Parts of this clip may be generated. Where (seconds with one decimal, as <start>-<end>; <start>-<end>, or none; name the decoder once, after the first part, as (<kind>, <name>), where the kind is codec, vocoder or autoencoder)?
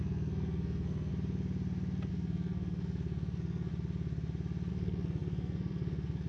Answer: 0.0-1.1 (codec, SNAC); 2.1-3.7; 4.7-6.3